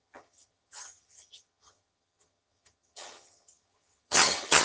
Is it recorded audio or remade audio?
remade